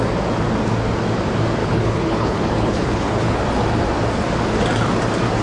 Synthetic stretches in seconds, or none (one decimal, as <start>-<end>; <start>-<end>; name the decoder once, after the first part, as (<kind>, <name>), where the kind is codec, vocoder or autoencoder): 1.6-3.4 (codec, HILCodec)